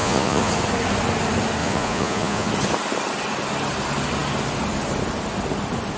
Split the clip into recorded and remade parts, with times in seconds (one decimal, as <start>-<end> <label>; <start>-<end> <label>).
0.0-0.5 remade; 0.5-1.6 recorded; 1.6-2.5 remade; 2.5-6.0 recorded